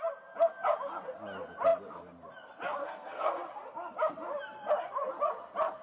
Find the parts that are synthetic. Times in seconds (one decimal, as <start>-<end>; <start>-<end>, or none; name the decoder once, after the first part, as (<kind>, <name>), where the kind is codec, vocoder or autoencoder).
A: 2.8-3.4 (codec, SNAC)